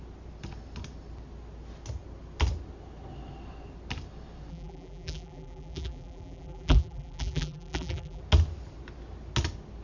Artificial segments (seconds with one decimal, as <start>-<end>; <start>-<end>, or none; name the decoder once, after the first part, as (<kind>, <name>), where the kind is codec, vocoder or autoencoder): 4.5-8.2 (vocoder, BigVGAN v2)

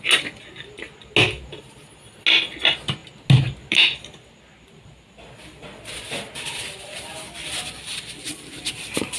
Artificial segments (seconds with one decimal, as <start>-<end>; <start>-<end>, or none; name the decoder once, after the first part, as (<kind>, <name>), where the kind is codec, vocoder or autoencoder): none

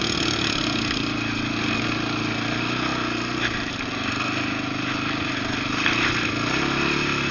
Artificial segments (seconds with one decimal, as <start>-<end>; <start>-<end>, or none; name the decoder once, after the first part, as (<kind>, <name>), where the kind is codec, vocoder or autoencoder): none

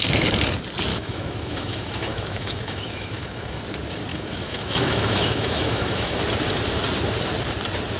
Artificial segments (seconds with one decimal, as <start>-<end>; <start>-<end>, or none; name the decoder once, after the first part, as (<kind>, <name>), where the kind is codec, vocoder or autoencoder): 0.9-3.6 (autoencoder, DAC-VAE); 4.1-6.2

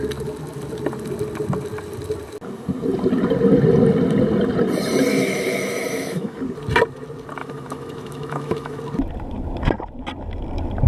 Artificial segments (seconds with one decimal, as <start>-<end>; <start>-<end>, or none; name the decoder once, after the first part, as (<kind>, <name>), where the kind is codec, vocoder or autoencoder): 5.1-6.4 (autoencoder, DAC-VAE); 7.4-8.8